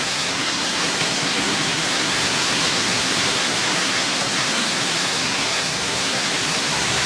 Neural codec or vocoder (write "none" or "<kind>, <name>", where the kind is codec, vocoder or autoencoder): codec, SNAC